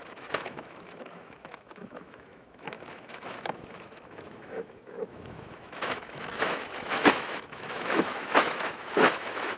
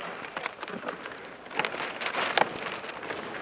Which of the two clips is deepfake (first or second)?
first